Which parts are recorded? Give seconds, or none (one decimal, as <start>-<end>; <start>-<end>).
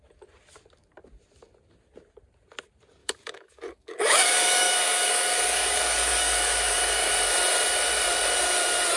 0.0-3.0; 7.1-9.0